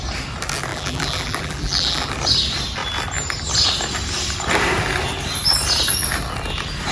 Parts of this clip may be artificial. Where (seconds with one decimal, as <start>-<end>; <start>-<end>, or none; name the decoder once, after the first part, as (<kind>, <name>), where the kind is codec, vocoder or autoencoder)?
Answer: 0.7-2.1 (vocoder, BigVGAN v2)